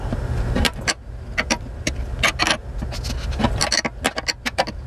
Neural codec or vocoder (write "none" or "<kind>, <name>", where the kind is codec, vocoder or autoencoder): none